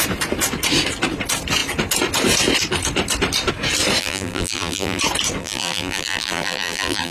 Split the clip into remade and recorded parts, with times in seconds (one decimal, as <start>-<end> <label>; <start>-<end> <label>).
0.0-4.0 recorded; 4.0-5.0 remade; 5.0-5.4 recorded; 5.4-7.1 remade